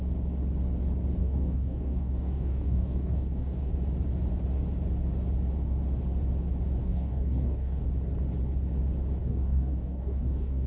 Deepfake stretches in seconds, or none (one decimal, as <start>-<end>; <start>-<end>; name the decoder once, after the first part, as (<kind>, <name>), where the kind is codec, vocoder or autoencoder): 1.2-3.7 (codec, DAC); 6.8-7.8; 9.2-10.7